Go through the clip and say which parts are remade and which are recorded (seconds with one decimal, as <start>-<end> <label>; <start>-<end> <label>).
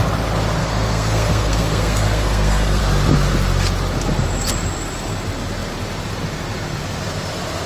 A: 0.0-0.6 recorded; 0.6-2.8 remade; 2.8-7.7 recorded